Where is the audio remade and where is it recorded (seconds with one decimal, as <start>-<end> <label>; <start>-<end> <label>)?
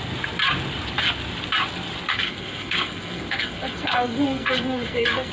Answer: 0.0-2.1 recorded; 2.1-5.3 remade